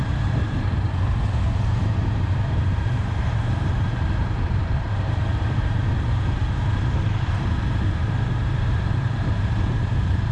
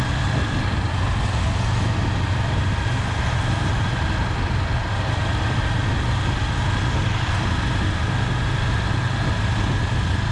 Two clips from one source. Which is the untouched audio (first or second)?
second